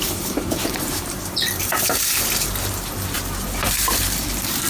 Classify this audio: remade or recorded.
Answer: remade